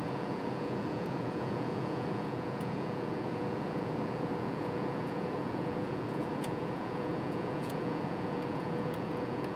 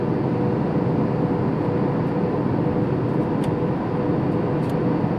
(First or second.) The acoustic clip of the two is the second